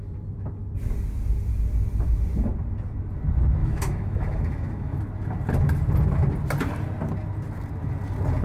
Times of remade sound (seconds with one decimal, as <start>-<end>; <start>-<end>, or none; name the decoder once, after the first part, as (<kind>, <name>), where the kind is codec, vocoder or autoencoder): 3.6-5.0 (autoencoder, DAC-VAE)

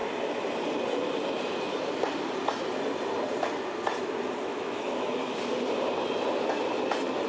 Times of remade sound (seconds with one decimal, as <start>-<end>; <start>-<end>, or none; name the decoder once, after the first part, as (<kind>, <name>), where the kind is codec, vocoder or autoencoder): 4.5-5.4 (autoencoder, DAC-VAE)